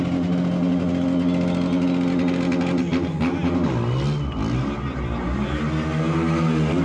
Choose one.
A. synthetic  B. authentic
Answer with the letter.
B